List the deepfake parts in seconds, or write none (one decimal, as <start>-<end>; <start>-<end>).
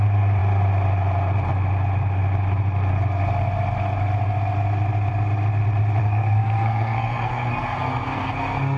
6.0-8.8